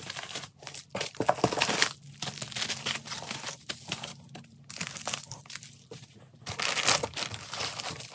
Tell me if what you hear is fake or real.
real